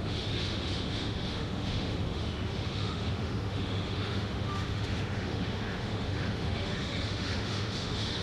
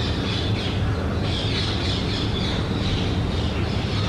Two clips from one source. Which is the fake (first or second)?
first